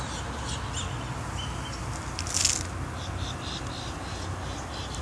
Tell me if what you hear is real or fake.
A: real